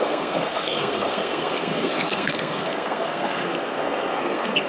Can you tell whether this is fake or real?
fake